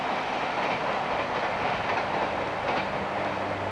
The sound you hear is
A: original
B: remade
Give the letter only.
A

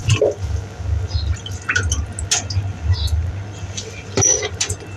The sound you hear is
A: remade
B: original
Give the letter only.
B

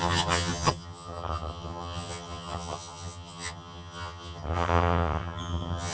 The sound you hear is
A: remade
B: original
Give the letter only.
A